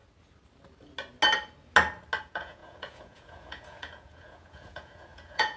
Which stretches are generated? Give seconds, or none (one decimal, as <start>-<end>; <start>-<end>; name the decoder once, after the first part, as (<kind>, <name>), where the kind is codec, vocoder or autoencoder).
2.2-5.6 (vocoder, Vocos)